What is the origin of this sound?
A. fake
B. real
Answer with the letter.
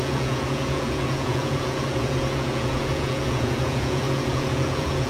A